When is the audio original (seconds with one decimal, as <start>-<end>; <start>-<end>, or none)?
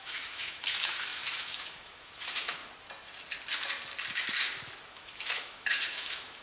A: 2.6-4.9